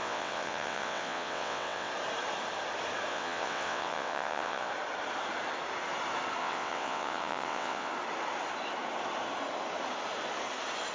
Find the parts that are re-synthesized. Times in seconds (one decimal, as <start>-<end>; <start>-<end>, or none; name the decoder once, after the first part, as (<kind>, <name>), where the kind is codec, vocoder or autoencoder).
0.0-1.9 (vocoder, WaveNeXt); 3.1-4.7; 6.4-7.9